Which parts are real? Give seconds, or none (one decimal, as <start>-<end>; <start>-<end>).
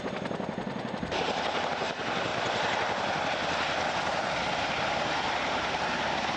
0.0-6.4